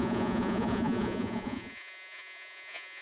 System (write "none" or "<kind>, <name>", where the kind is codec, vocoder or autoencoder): vocoder, Vocos